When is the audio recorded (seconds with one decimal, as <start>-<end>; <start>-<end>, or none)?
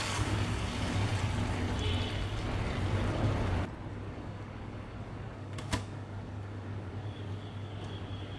1.1-3.9